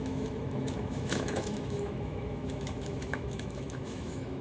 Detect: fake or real fake